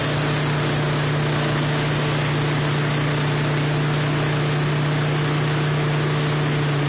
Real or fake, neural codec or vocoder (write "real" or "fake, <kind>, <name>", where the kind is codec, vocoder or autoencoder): real